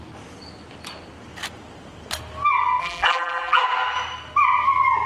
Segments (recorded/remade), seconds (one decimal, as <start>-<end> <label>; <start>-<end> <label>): 0.0-2.8 recorded; 2.8-3.6 remade; 3.6-5.1 recorded